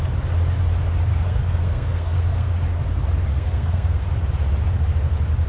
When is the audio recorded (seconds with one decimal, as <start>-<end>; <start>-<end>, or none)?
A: 0.0-1.1; 2.5-3.3; 4.0-5.5